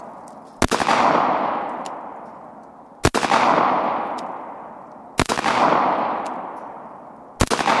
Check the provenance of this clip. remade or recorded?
recorded